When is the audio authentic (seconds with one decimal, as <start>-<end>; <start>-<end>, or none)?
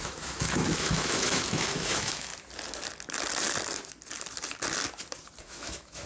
2.3-5.4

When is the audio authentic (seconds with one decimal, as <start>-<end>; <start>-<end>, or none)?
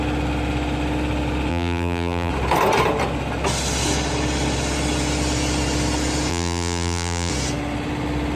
0.0-1.5; 2.3-6.3; 7.3-8.4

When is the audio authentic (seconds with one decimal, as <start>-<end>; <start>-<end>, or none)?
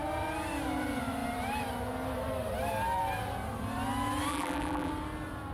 0.0-4.3; 4.9-5.5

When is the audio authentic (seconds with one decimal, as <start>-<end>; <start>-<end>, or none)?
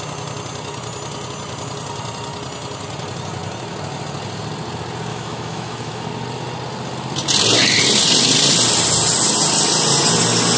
0.0-5.1; 6.1-10.6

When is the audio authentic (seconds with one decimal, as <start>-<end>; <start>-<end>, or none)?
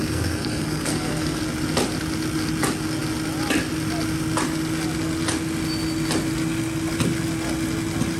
1.4-8.2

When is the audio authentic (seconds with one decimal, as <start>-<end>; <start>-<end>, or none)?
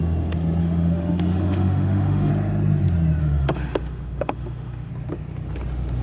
0.0-0.6; 2.3-3.2; 4.9-6.0